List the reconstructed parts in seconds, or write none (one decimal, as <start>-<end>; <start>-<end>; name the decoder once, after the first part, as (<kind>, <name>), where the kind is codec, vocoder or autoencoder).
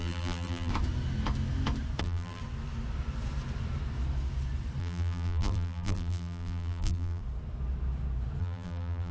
0.0-0.7 (vocoder, BigVGAN v2); 2.0-2.4; 4.8-7.2; 8.4-9.1